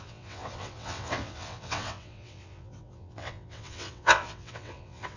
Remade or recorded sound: remade